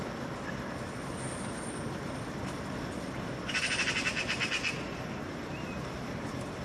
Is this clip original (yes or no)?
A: yes